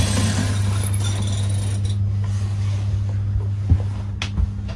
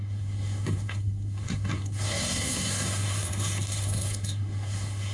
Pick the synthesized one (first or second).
second